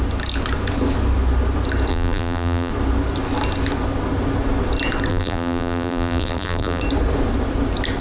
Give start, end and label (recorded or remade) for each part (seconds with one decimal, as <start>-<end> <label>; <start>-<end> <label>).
0.0-1.9 recorded; 1.9-2.7 remade; 2.7-5.1 recorded; 5.1-6.8 remade; 6.8-8.0 recorded